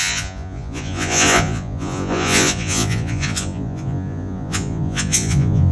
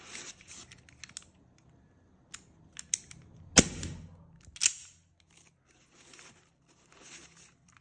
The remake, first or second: first